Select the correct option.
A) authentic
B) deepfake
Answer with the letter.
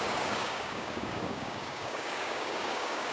B